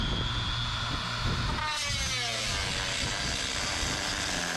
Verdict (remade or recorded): recorded